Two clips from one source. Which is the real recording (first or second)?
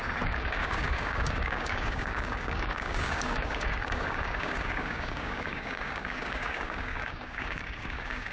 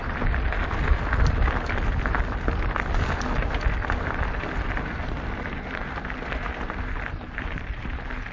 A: second